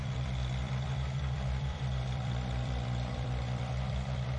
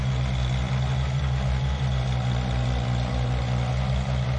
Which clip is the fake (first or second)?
first